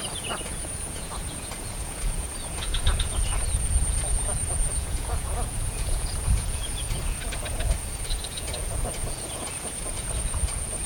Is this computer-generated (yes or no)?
yes